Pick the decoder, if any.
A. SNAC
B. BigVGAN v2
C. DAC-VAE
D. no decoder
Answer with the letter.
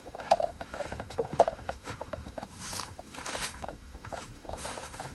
C